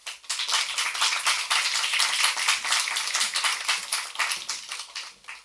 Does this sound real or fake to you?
real